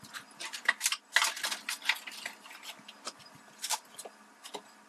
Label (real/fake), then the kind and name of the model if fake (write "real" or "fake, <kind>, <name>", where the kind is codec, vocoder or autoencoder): real